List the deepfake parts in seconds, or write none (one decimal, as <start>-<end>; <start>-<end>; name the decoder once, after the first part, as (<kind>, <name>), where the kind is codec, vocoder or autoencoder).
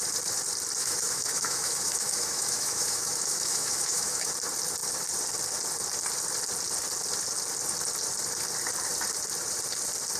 0.8-4.3 (autoencoder, DAC-VAE)